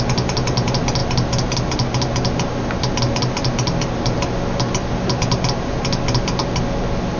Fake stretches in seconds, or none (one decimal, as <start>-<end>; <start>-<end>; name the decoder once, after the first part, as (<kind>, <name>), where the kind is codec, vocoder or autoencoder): none